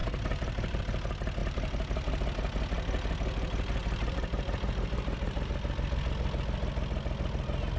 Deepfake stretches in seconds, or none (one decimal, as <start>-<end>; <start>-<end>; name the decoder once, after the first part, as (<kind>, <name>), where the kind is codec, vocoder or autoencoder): 0.0-0.8 (vocoder, BigVGAN v2); 1.4-2.2; 3.8-5.5